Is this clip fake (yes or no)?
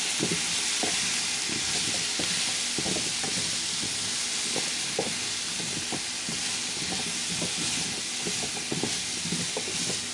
no